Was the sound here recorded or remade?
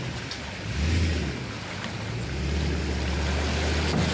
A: recorded